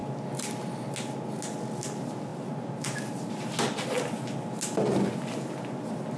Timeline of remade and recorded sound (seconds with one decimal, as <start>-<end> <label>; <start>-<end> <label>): 0.0-6.2 recorded